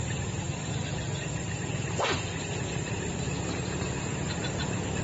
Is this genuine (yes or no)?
no